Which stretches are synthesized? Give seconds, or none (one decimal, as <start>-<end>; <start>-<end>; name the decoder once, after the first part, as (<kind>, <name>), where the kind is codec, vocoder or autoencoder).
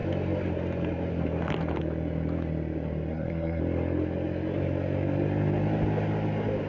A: 3.1-3.6 (codec, SNAC)